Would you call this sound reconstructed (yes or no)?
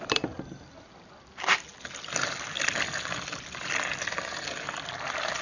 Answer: no